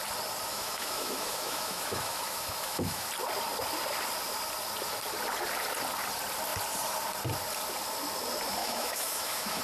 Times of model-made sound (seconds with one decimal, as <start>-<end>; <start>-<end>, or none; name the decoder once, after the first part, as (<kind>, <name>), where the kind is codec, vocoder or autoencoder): 0.5-3.1 (autoencoder, DAC-VAE); 8.6-9.6